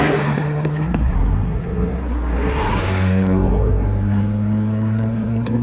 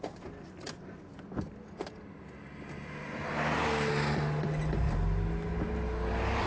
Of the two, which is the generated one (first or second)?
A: first